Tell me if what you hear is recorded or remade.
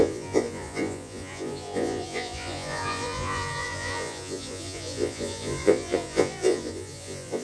remade